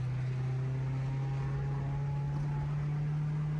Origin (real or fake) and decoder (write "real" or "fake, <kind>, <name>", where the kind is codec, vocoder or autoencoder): real